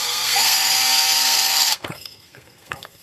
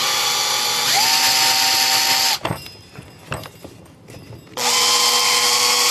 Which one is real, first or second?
second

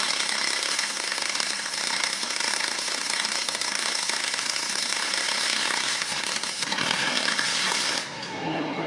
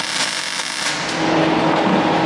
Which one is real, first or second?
second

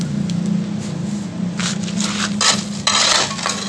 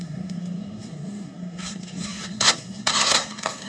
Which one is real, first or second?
first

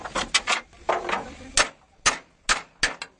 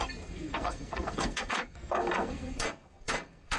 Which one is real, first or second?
first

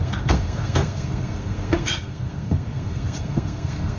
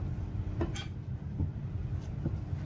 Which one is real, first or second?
second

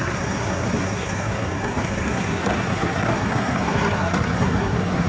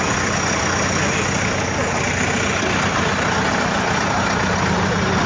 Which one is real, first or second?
second